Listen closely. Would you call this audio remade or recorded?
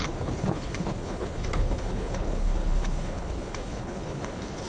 remade